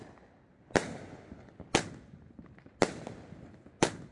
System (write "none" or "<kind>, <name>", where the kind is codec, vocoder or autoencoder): none